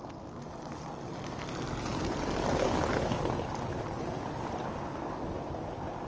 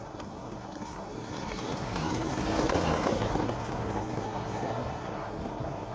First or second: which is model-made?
second